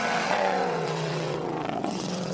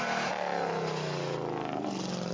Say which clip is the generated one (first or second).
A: first